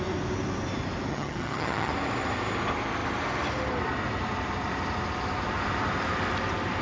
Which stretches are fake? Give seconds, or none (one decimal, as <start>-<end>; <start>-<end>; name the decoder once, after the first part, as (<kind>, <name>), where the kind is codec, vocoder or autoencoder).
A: 1.1-1.9 (vocoder, HiFi-GAN)